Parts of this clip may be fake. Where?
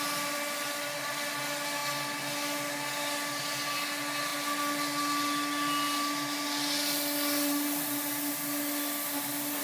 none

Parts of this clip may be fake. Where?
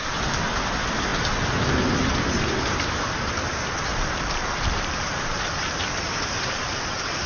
3.9-7.3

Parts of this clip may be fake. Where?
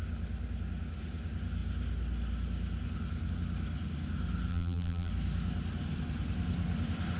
4.5-5.1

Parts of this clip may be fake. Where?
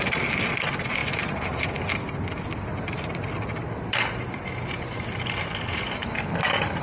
1.0-1.8; 2.7-6.3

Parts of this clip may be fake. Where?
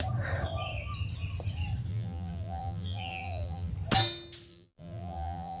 1.9-3.7; 4.5-5.6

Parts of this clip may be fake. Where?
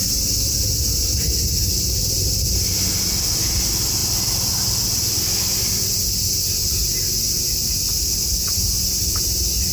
none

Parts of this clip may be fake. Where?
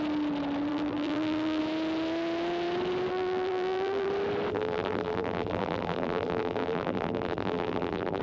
0.7-1.6; 3.1-4.1; 4.5-8.2